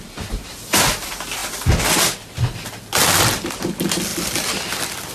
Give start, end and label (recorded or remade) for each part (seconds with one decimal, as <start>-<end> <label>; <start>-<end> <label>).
0.0-5.1 recorded